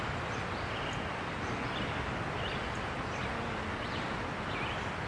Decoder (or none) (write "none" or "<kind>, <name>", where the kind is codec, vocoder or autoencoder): none